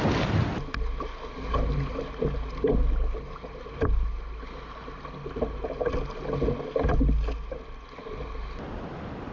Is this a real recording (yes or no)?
yes